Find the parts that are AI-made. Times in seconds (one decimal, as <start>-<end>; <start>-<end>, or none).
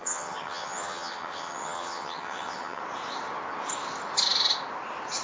0.0-2.8